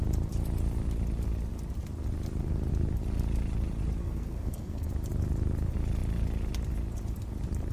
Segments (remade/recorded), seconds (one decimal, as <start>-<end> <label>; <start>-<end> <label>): 0.0-4.0 recorded; 4.0-4.9 remade; 4.9-7.7 recorded